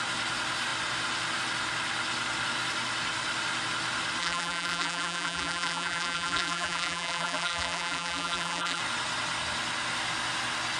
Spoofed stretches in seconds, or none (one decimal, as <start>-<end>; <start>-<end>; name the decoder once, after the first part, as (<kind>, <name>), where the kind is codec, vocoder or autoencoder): 4.2-8.8 (vocoder, BigVGAN v2)